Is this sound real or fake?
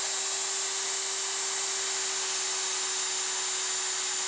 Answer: real